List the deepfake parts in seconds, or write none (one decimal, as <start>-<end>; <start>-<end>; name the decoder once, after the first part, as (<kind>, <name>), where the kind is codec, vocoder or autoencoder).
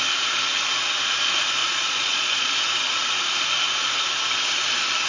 1.6-2.5 (vocoder, Vocos)